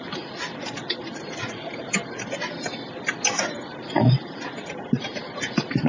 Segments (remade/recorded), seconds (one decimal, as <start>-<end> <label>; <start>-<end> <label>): 0.0-5.9 recorded

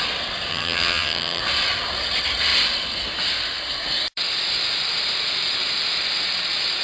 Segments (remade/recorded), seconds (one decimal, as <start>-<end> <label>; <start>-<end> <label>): 0.0-0.5 recorded; 0.5-1.4 remade; 1.4-6.8 recorded